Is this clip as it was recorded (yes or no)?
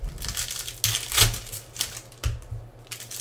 yes